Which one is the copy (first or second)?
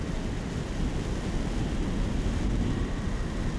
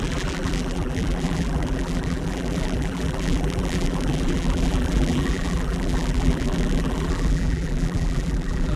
second